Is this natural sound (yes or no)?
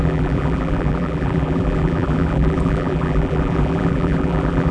no